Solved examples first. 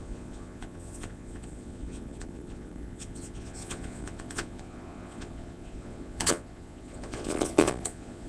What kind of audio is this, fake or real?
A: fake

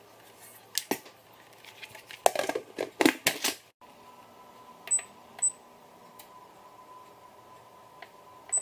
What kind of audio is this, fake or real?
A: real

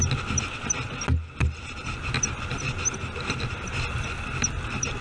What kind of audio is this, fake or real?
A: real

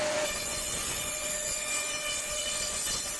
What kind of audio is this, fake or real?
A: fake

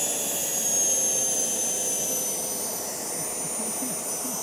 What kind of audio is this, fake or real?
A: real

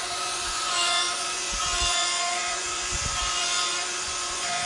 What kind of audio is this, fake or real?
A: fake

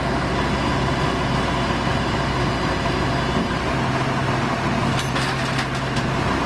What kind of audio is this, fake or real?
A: real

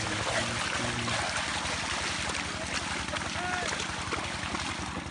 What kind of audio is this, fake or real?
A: real